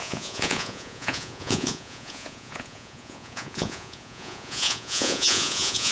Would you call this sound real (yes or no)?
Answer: no